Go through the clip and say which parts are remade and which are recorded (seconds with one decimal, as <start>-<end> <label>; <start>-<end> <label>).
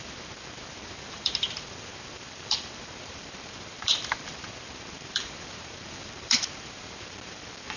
0.0-7.8 remade